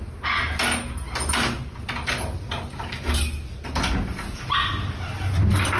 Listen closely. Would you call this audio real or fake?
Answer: real